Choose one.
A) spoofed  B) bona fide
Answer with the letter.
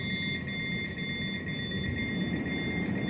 B